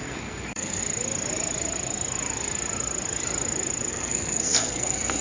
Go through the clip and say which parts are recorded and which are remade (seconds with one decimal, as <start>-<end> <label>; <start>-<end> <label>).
0.0-0.8 remade; 0.8-3.9 recorded; 3.9-5.2 remade